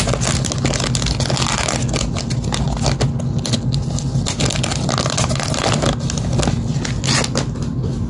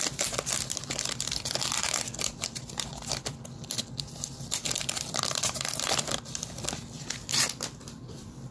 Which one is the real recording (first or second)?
first